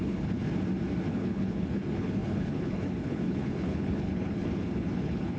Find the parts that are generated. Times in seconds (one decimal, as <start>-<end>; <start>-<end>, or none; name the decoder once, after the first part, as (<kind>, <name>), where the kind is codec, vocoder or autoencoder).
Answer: 0.0-0.4 (codec, HILCodec); 1.1-5.4